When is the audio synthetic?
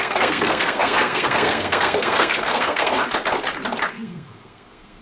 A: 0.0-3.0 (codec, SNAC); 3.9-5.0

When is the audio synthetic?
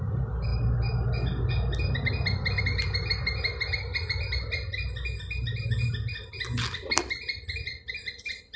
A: none